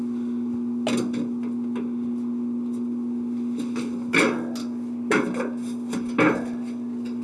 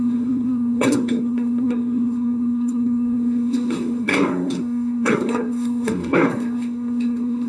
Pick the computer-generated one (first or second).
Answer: second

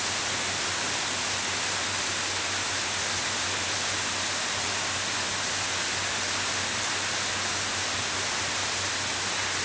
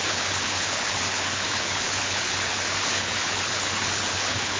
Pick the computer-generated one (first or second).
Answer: second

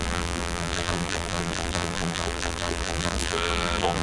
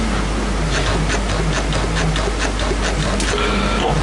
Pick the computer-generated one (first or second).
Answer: first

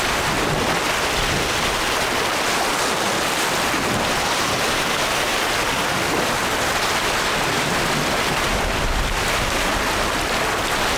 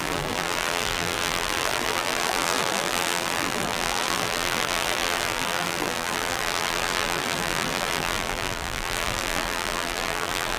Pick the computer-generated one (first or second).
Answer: second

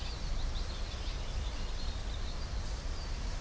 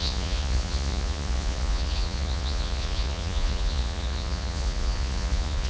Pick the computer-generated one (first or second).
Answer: second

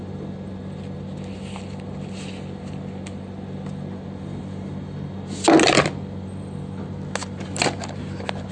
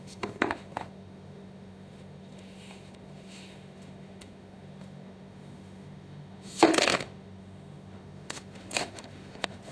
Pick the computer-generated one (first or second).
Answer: second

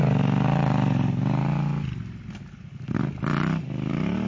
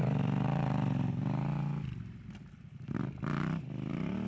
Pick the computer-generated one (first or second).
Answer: second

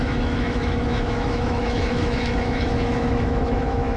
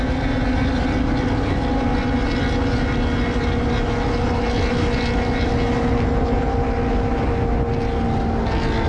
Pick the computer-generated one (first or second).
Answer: first